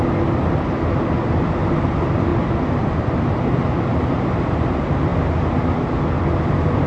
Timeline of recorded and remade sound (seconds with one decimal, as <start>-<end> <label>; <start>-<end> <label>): 0.0-2.3 remade; 2.3-4.1 recorded; 4.1-5.1 remade; 5.1-6.0 recorded; 6.0-6.9 remade